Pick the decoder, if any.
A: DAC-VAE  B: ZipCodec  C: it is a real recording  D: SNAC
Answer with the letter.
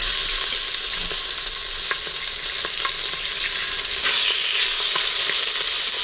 C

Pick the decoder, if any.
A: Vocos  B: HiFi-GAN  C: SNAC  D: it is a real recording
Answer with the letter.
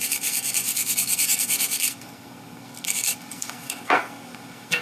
C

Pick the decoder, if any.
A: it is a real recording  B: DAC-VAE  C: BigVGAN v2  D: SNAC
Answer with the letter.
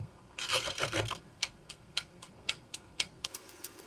D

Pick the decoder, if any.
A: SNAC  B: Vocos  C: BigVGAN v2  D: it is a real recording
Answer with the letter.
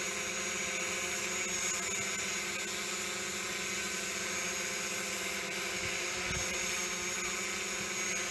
D